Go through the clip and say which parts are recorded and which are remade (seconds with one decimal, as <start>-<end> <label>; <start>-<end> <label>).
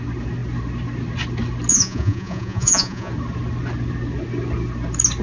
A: 0.0-1.7 recorded; 1.7-3.1 remade; 3.1-5.2 recorded